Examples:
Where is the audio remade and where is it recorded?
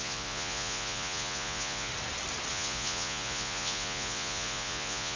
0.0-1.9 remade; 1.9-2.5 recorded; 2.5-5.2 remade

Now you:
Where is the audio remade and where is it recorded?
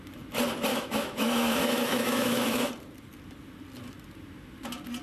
0.0-0.7 recorded; 0.7-2.7 remade; 2.7-5.0 recorded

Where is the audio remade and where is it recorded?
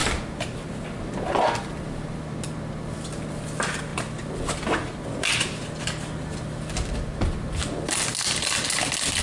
0.0-9.2 recorded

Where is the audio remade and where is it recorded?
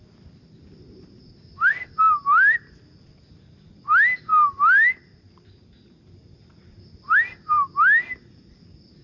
0.0-9.0 recorded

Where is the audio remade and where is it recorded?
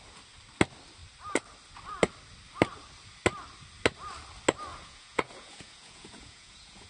0.0-4.7 recorded; 4.7-6.9 remade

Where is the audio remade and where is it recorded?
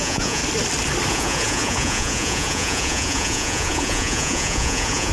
0.0-0.4 remade; 0.4-1.1 recorded; 1.1-5.1 remade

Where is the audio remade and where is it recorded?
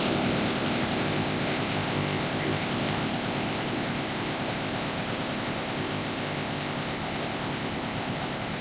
0.0-8.6 remade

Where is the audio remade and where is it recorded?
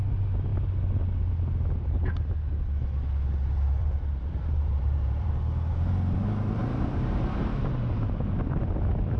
0.0-3.8 recorded; 3.8-5.3 remade; 5.3-6.6 recorded; 6.6-7.2 remade; 7.2-9.2 recorded